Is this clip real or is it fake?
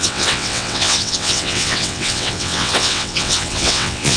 fake